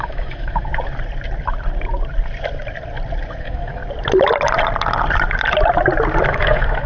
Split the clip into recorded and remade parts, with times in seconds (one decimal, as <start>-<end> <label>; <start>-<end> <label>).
0.0-0.7 remade; 0.7-3.4 recorded; 3.4-3.8 remade; 3.8-6.3 recorded; 6.3-6.9 remade